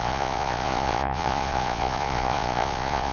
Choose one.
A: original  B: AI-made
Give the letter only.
B